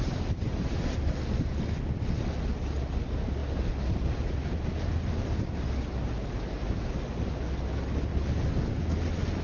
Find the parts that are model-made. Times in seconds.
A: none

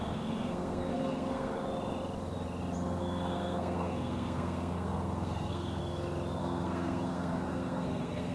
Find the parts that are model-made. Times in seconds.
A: 0.0-1.5 (codec, SNAC); 3.0-5.8; 6.4-8.3

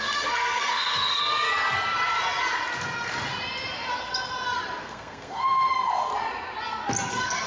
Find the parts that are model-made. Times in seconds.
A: 0.0-1.2 (codec, SNAC); 4.8-6.1; 7.1-7.5

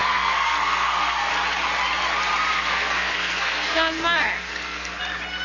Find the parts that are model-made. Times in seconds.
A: 0.0-1.3 (codec, SNAC); 2.5-5.0

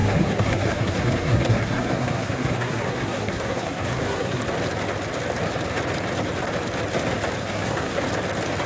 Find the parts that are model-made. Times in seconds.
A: 0.0-4.4 (codec, SNAC); 7.4-8.0

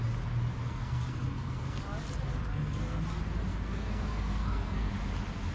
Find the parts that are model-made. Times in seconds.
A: 0.6-1.8 (codec, SNAC); 2.5-3.0; 3.5-4.9

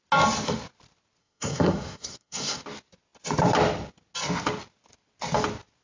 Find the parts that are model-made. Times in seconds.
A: 1.2-2.6 (codec, SNAC)

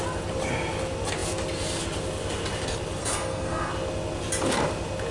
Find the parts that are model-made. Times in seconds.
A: 3.0-3.7 (codec, SNAC)